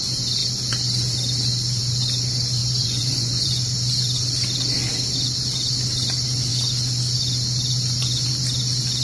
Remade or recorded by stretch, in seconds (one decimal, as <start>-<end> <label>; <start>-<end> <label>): 0.0-2.6 recorded; 2.6-3.6 remade; 3.6-9.0 recorded